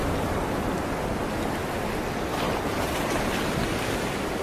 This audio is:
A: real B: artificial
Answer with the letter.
A